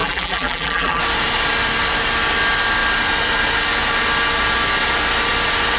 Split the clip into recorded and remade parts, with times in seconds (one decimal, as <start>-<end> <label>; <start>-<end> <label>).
0.0-1.0 remade; 1.0-5.8 recorded